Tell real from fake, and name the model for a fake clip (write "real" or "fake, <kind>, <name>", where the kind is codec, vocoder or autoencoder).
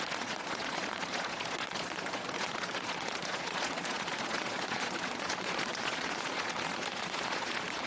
fake, vocoder, Vocos